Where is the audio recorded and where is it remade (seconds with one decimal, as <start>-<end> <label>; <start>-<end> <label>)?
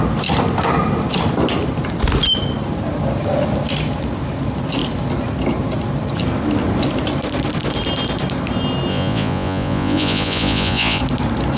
0.0-8.9 recorded; 8.9-11.0 remade; 11.0-11.6 recorded